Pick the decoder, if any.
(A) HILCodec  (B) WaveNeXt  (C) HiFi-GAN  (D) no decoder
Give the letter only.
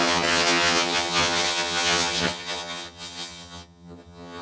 C